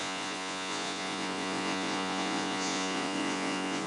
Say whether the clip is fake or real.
fake